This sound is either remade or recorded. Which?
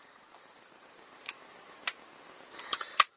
remade